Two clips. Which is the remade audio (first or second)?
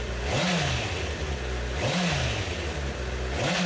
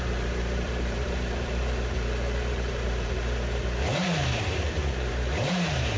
second